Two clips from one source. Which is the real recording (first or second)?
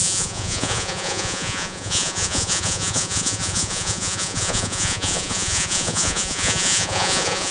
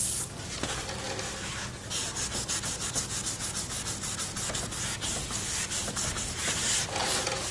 second